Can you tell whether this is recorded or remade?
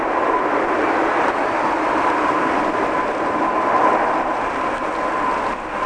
recorded